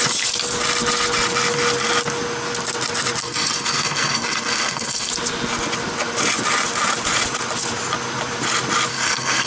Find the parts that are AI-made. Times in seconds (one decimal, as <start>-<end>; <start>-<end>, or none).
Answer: 3.2-5.1; 8.9-9.5